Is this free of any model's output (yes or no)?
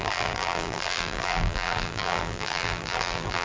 no